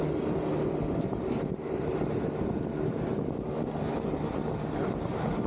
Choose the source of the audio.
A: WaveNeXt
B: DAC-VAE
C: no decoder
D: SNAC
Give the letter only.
C